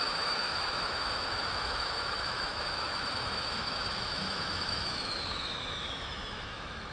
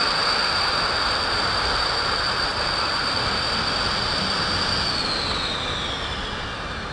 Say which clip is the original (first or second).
second